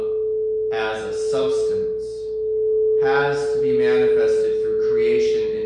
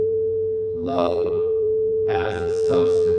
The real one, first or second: first